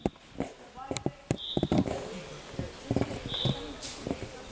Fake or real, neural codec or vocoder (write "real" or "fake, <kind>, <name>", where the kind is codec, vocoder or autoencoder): real